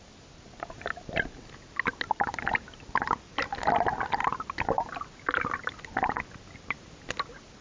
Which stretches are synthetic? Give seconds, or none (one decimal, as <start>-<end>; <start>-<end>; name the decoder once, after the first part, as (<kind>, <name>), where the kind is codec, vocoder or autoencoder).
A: none